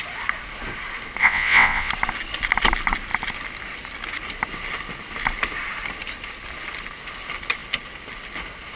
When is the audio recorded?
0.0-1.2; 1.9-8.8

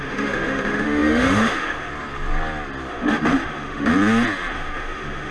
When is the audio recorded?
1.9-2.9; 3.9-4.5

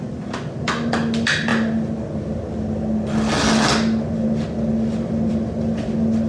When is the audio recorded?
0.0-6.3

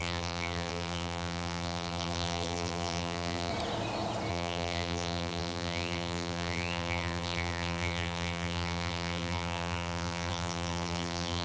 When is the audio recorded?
3.5-4.3

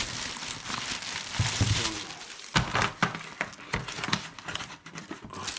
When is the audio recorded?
0.0-5.6

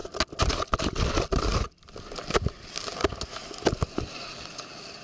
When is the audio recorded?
0.0-5.0

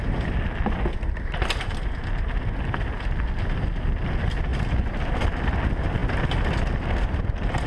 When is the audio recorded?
0.0-4.5; 5.1-7.7